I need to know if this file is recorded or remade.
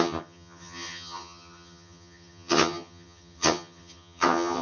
remade